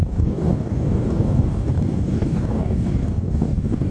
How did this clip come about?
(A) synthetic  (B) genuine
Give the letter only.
A